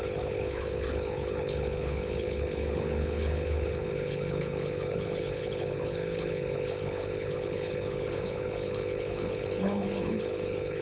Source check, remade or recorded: remade